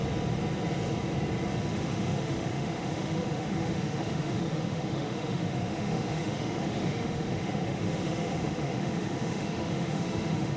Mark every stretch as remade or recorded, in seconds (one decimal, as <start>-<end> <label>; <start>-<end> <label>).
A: 0.0-1.7 recorded; 1.7-10.6 remade